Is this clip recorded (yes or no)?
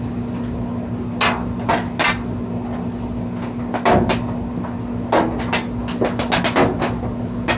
yes